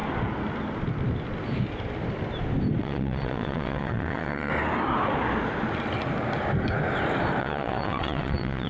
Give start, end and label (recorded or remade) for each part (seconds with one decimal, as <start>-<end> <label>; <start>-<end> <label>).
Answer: 0.0-2.8 recorded; 2.8-4.5 remade; 4.5-7.4 recorded; 7.4-8.7 remade